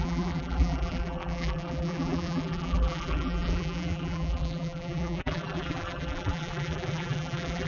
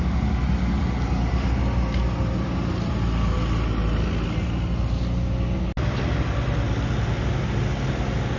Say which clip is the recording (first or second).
second